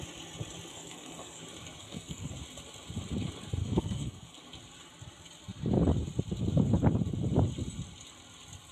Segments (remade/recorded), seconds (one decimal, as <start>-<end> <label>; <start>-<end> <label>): 0.0-0.7 recorded; 0.7-1.4 remade; 1.4-1.8 recorded; 1.8-2.3 remade; 2.3-3.6 recorded; 3.6-4.4 remade; 4.4-8.7 recorded